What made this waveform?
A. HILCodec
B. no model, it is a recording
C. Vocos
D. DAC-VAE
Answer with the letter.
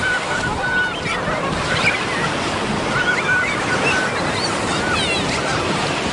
B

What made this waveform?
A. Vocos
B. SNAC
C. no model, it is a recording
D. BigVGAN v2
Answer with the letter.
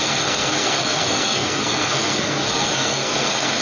B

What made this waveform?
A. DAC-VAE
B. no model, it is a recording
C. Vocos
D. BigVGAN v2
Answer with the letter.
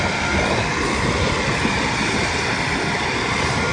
D